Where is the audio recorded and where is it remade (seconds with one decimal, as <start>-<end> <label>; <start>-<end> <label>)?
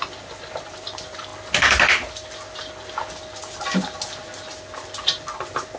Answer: 0.0-5.8 recorded